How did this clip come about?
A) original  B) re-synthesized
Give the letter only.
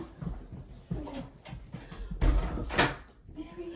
A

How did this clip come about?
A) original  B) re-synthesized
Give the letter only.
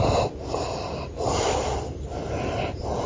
A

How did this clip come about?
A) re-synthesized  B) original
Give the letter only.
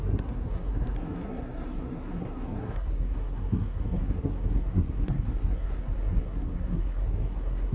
A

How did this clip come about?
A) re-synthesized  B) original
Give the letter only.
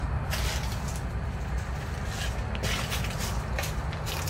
B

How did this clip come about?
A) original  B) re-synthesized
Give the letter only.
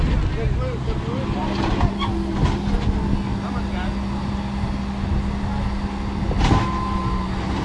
A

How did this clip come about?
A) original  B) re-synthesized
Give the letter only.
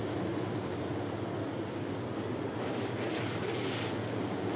A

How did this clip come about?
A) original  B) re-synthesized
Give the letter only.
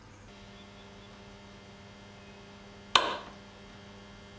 A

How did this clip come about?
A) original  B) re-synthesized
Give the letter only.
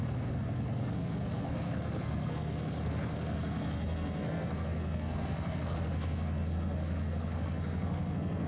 B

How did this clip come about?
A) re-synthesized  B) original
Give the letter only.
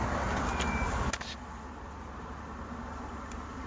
B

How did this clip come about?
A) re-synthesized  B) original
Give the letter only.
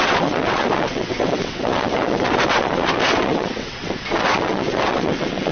A